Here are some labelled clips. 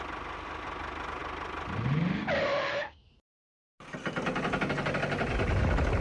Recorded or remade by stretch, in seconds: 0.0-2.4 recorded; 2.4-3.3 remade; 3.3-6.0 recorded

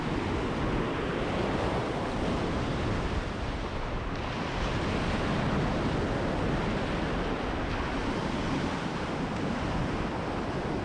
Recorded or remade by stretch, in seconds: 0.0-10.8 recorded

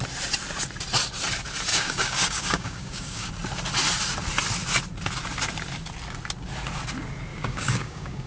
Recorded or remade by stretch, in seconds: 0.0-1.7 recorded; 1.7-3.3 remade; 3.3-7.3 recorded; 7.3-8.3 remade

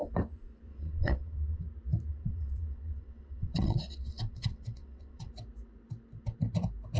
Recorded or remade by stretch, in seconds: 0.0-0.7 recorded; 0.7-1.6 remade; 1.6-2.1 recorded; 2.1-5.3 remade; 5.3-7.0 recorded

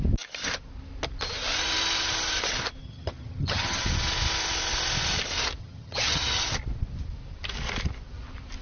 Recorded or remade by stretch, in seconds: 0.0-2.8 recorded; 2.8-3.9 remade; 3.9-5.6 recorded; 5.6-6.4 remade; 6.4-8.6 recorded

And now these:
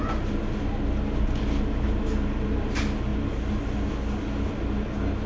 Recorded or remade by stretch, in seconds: 0.0-5.3 recorded